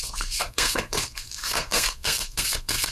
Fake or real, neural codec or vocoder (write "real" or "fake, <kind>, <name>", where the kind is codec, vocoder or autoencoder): fake, codec, SNAC